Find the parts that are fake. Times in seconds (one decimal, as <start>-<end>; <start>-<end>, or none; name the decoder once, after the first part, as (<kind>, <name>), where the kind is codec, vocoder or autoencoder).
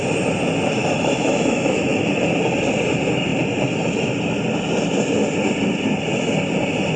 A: 0.8-2.0 (autoencoder, DAC-VAE)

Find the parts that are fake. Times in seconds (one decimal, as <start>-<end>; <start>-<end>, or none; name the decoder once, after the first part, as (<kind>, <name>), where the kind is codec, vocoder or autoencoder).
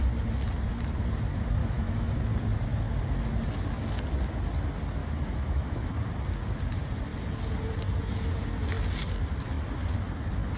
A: 1.6-2.2 (autoencoder, DAC-VAE); 5.0-5.9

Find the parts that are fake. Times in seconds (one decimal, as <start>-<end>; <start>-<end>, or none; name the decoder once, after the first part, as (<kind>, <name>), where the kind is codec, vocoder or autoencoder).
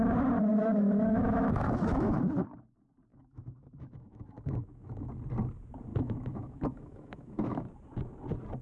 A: 0.5-2.2 (autoencoder, DAC-VAE); 3.1-5.1; 5.9-7.7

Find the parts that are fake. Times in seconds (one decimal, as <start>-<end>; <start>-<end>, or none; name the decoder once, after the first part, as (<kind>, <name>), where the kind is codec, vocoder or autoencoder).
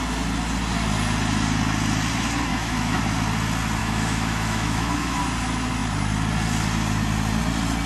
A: 2.5-3.0 (autoencoder, DAC-VAE); 3.8-5.2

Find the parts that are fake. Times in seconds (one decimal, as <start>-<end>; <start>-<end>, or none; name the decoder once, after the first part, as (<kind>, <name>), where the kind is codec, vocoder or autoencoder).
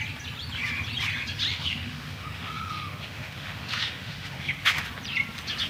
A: 1.5-4.9 (autoencoder, DAC-VAE)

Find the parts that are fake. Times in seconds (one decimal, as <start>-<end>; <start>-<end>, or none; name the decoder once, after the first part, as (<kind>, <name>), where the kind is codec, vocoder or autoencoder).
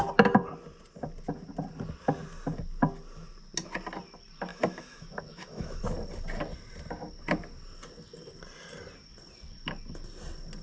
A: 4.5-5.8 (autoencoder, DAC-VAE)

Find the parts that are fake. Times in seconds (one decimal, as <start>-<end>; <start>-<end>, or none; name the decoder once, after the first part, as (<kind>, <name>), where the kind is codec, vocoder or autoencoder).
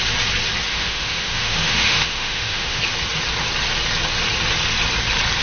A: 0.7-2.8 (autoencoder, DAC-VAE)